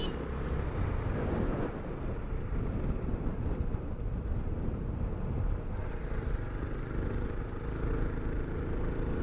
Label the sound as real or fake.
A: real